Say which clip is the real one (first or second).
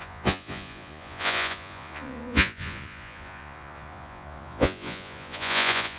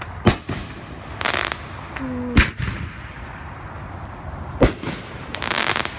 second